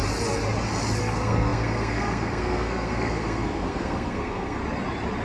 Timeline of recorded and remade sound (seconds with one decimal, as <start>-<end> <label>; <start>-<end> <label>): 0.0-1.0 recorded; 1.0-4.6 remade; 4.6-5.2 recorded